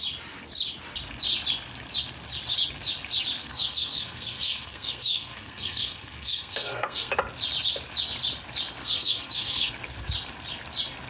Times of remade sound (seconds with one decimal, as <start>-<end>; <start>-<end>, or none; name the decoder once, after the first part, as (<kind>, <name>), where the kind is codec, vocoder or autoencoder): 3.4-7.1 (codec, SNAC); 8.8-9.7